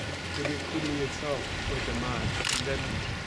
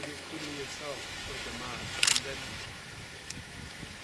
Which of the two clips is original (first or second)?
first